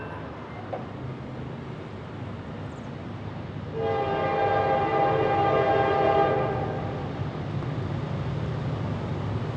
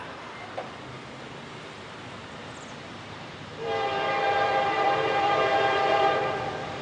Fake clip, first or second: second